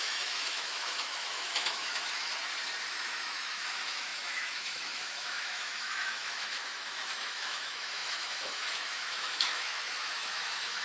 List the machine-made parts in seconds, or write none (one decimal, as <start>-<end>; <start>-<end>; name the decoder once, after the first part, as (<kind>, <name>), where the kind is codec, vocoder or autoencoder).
0.0-2.3 (autoencoder, DAC-VAE); 2.9-10.8